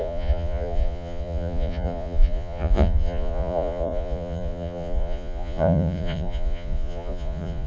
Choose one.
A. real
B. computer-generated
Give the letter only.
B